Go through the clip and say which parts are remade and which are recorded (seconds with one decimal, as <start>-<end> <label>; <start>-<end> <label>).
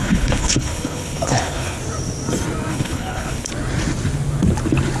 0.0-1.8 remade; 1.8-2.7 recorded; 2.7-3.5 remade; 3.5-5.0 recorded